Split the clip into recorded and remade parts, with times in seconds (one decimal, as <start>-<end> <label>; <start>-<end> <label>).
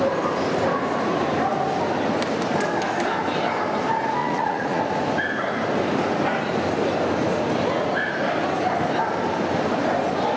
0.0-4.2 recorded; 4.2-4.8 remade; 4.8-10.4 recorded